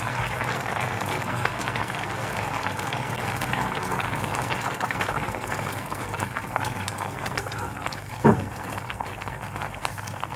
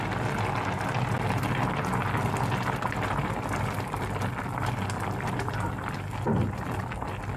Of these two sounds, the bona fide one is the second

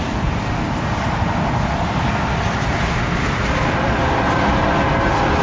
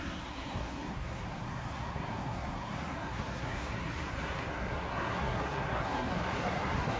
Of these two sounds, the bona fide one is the first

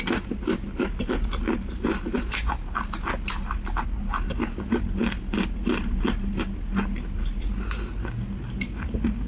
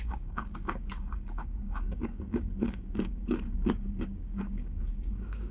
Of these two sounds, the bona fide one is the first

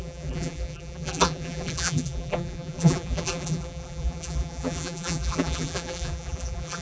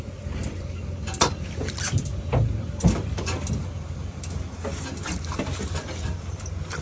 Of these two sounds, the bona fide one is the second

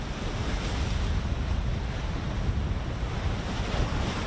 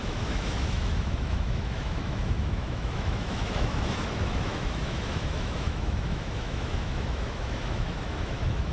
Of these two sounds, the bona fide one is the first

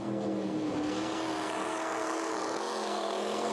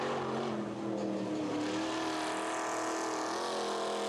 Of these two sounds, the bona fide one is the second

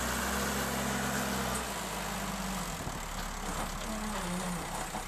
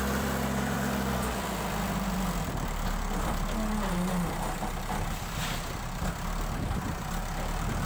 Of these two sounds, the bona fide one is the first